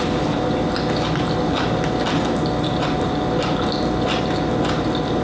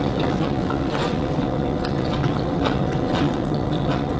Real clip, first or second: first